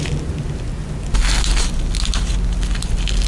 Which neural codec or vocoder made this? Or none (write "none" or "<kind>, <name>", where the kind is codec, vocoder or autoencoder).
none